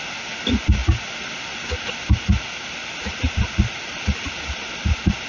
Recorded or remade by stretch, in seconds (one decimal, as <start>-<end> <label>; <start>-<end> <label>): 0.0-5.3 recorded